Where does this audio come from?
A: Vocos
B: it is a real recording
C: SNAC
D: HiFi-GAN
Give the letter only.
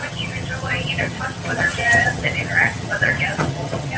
D